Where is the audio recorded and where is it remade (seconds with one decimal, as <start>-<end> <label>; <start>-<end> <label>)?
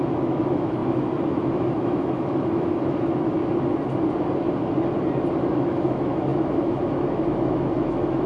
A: 0.0-3.4 remade; 3.4-5.4 recorded; 5.4-8.3 remade